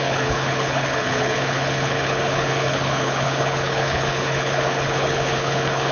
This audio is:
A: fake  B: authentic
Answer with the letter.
A